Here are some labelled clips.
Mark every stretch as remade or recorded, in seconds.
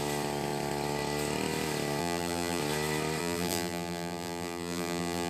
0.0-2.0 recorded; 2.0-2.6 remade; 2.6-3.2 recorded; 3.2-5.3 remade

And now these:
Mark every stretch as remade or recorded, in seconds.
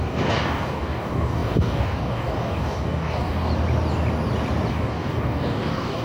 0.0-3.5 remade; 3.5-4.7 recorded; 4.7-6.0 remade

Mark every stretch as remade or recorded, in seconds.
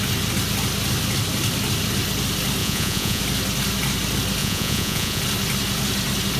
0.0-2.6 recorded; 2.6-3.2 remade; 3.2-4.4 recorded; 4.4-5.2 remade; 5.2-6.4 recorded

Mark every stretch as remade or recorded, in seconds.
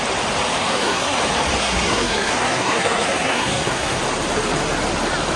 0.0-0.6 recorded; 0.6-1.2 remade; 1.2-1.6 recorded; 1.6-4.0 remade; 4.0-5.4 recorded